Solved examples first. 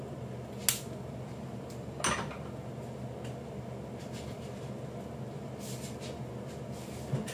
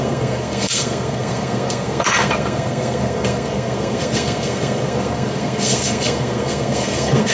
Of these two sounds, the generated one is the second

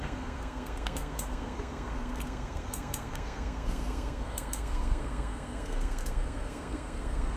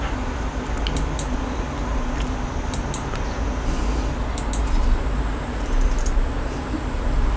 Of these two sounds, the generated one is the first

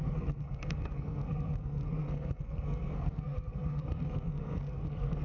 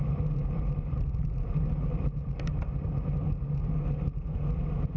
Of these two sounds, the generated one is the first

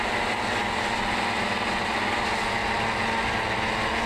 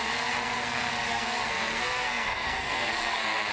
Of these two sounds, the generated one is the second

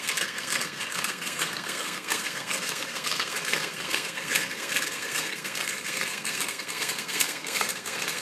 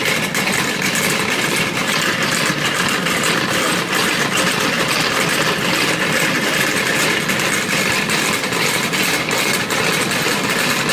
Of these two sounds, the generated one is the first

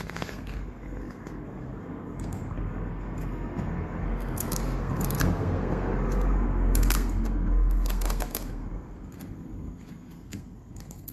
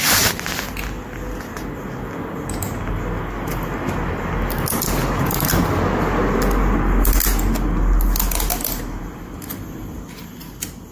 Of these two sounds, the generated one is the first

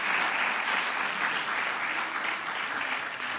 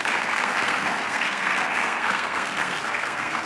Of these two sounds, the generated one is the second